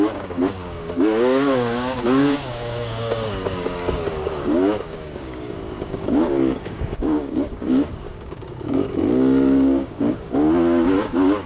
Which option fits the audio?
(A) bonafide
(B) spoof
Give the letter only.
B